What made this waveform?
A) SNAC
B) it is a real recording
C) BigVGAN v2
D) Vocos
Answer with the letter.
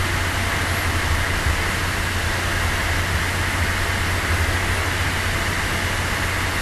B